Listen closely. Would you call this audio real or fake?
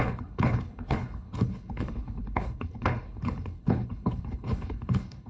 fake